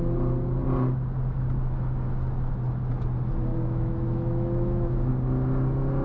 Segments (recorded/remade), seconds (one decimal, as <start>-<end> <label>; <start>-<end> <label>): 0.0-3.5 recorded; 3.5-5.1 remade; 5.1-6.0 recorded